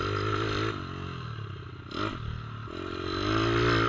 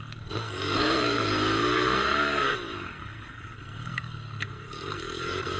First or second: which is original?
first